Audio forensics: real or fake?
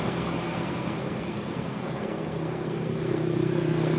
fake